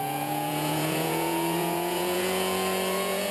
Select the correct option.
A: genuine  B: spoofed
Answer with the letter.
B